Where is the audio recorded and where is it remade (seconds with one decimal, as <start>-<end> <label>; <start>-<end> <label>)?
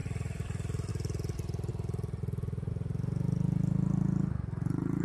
0.0-0.9 remade; 0.9-1.7 recorded; 1.7-2.7 remade; 2.7-5.0 recorded